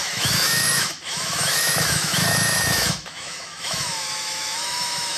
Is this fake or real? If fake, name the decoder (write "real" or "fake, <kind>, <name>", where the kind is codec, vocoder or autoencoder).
fake, autoencoder, DAC-VAE